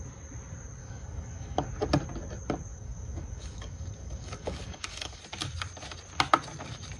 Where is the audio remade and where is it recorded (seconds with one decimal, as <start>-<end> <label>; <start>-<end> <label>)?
0.0-0.8 recorded; 0.8-1.7 remade; 1.7-2.7 recorded; 2.7-5.2 remade; 5.2-7.0 recorded